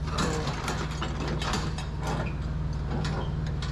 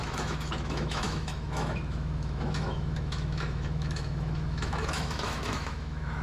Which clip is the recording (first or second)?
first